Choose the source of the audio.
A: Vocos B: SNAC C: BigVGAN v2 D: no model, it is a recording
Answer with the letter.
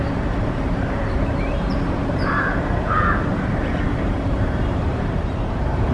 C